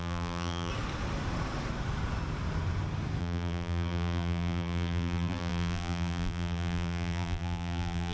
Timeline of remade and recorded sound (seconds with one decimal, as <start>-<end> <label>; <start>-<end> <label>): 0.0-0.7 remade; 0.7-3.2 recorded; 3.2-8.1 remade